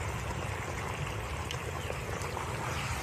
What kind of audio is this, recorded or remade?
recorded